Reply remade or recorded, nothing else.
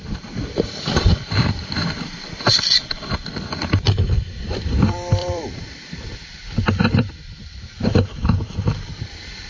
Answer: remade